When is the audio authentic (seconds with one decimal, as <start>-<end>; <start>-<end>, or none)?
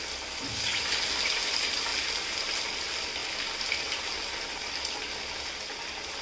0.0-6.2